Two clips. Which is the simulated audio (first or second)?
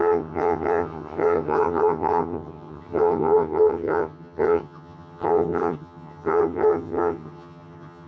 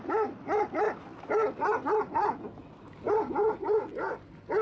first